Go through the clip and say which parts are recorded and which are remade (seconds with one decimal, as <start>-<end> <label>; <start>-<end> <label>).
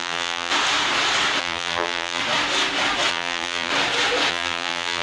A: 0.0-0.5 remade; 0.5-1.4 recorded; 1.4-2.2 remade; 2.2-3.1 recorded; 3.1-3.7 remade; 3.7-4.3 recorded; 4.3-5.0 remade